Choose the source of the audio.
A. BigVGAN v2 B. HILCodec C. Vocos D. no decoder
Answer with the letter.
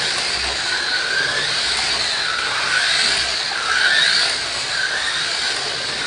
D